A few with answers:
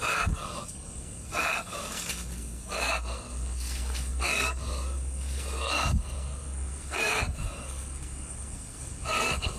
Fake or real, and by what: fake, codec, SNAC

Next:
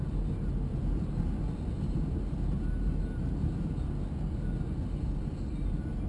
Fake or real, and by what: real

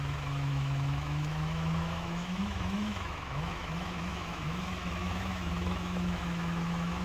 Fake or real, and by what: fake, autoencoder, DAC-VAE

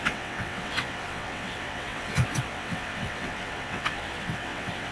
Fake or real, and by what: fake, vocoder, WaveNeXt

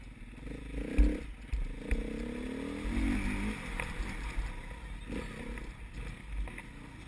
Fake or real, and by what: real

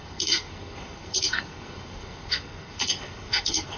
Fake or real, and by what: fake, codec, SNAC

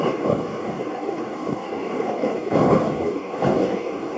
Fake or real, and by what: fake, codec, DAC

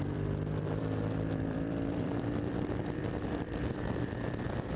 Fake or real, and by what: fake, vocoder, BigVGAN v2